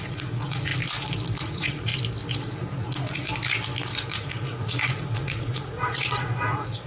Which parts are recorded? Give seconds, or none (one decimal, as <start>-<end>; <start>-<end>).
0.7-1.4; 1.9-2.4; 3.3-4.1